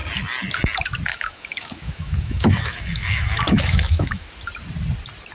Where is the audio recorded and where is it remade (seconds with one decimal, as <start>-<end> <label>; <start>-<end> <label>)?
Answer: 0.0-1.1 recorded; 1.1-4.3 remade; 4.3-5.3 recorded